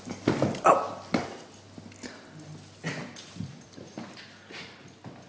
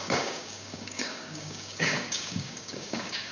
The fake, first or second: second